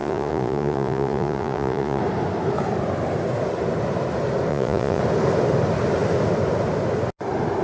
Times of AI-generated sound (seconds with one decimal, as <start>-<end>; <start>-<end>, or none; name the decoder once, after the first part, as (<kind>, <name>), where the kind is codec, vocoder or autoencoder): 0.0-2.0 (vocoder, Vocos); 4.5-5.0